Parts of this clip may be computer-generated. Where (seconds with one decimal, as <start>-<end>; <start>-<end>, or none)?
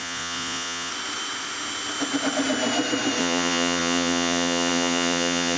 0.0-0.9; 3.2-5.6